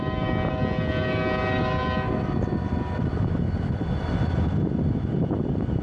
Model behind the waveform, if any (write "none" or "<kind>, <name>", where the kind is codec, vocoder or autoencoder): none